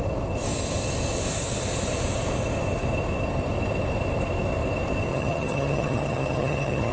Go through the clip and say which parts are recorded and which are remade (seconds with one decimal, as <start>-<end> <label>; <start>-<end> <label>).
0.0-5.1 recorded; 5.1-6.9 remade